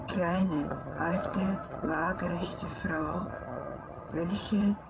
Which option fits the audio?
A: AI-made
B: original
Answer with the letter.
A